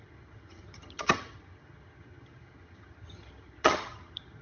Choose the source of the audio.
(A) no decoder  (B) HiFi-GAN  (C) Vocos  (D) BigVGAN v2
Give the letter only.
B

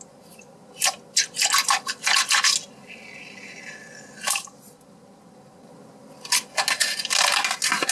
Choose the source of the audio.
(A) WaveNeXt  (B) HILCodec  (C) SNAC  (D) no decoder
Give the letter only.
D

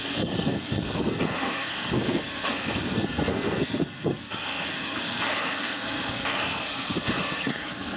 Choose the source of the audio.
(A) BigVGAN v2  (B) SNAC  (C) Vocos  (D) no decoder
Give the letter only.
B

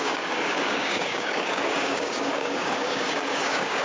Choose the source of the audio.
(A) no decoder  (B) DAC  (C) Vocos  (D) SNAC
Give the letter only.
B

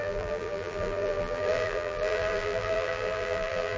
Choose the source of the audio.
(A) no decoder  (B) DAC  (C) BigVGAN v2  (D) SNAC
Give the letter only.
C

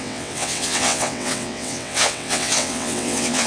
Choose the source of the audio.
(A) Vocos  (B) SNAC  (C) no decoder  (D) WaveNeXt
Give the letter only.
D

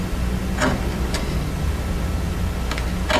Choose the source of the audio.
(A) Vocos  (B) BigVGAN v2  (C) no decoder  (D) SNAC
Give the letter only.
C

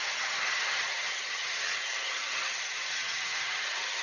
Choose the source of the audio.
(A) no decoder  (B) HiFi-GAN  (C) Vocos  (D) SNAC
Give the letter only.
B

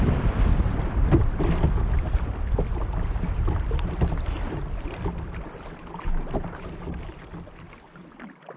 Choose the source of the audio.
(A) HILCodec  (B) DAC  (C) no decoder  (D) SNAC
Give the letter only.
C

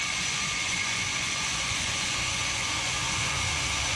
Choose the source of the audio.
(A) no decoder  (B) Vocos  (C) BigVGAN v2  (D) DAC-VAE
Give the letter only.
B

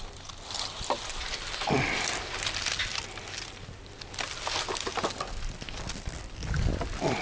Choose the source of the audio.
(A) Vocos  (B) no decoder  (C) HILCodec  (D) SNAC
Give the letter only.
B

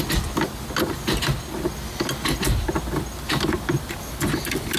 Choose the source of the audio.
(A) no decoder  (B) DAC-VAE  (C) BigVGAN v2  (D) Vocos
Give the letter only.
A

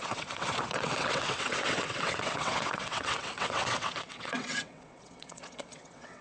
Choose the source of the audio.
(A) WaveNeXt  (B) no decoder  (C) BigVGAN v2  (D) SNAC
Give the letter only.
A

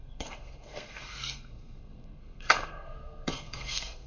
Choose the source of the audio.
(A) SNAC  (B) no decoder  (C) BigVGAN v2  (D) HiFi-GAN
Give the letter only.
A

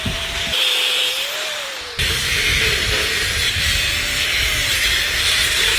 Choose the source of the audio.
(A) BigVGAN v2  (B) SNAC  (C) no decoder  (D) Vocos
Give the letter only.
A